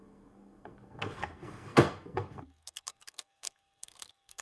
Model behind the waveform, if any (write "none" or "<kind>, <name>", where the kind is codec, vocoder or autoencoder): codec, SNAC